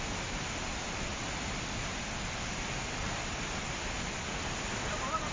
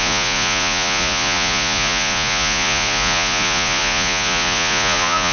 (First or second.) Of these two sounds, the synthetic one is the second